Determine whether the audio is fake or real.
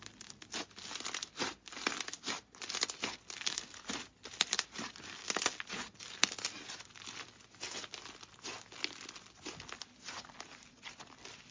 real